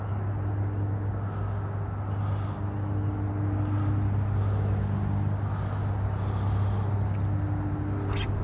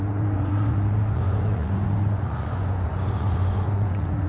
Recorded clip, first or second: first